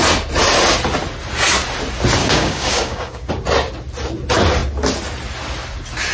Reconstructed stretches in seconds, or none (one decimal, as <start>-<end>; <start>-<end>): 2.2-3.3